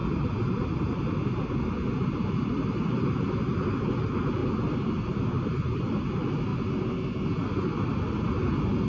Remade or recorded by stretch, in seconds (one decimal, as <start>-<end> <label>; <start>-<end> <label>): 0.0-1.0 remade; 1.0-4.4 recorded; 4.4-5.8 remade; 5.8-8.9 recorded